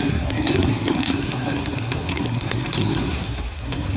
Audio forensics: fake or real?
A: fake